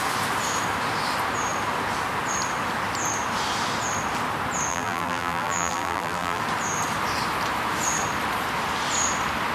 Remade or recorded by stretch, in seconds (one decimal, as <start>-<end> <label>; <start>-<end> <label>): 0.0-4.7 recorded; 4.7-6.4 remade; 6.4-9.5 recorded